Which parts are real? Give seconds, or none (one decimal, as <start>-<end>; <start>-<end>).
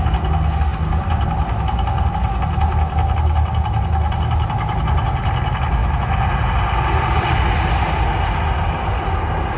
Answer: 0.0-9.6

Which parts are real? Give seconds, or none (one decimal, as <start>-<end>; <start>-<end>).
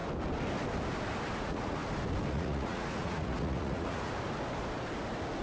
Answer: 0.0-1.4; 1.8-2.3; 4.1-5.4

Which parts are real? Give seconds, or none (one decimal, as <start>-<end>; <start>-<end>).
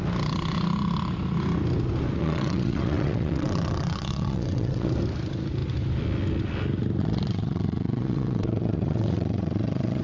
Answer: 0.0-2.2; 4.9-7.0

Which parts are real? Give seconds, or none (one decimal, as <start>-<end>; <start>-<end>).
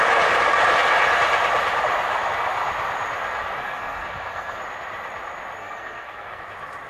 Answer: 0.0-3.6; 4.6-5.6; 6.4-6.9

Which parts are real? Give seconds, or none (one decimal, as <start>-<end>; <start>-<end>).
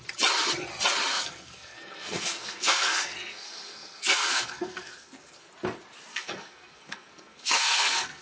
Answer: 0.0-1.1; 5.5-6.1